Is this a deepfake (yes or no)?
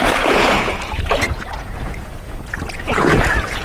yes